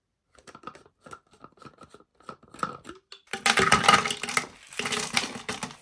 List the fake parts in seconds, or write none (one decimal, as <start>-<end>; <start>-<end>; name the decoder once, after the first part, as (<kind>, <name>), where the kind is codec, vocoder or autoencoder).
0.0-2.1 (vocoder, BigVGAN v2)